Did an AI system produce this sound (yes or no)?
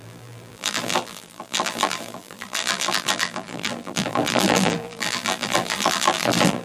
yes